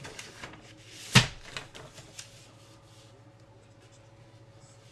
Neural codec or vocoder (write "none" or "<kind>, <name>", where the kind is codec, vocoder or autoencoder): none